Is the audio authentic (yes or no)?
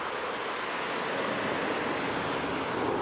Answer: yes